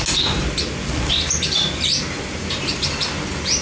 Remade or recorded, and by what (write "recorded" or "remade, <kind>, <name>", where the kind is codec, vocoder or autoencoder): recorded